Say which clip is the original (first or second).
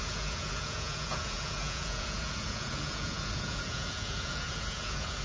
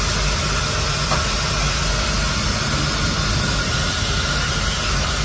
second